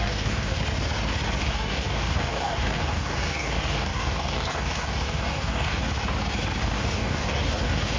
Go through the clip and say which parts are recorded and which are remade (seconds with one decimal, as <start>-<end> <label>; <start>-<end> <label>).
0.0-0.6 remade; 0.6-1.4 recorded; 1.4-5.8 remade; 5.8-6.6 recorded; 6.6-8.0 remade